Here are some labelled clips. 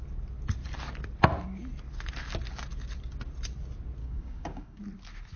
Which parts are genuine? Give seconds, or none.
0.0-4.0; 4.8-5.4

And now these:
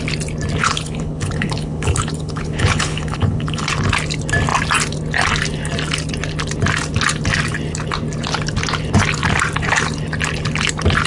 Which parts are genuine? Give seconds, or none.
0.0-0.6; 3.7-11.1

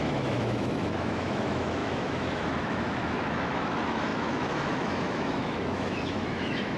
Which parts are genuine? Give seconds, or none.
none